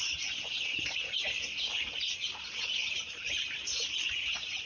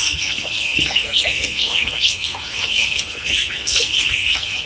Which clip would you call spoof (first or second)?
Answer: second